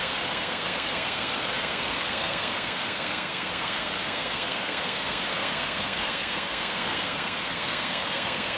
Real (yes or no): no